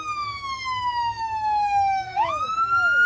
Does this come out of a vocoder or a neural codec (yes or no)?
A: yes